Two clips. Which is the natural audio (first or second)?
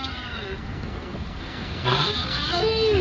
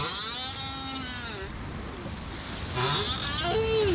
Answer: second